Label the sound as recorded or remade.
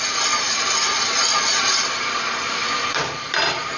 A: remade